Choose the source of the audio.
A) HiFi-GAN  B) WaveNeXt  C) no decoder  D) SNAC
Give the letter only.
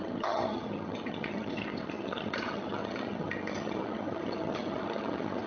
A